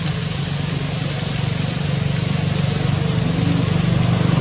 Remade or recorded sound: recorded